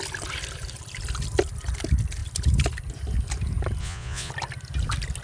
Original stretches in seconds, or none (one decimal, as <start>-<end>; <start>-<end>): 0.0-3.8; 4.3-5.2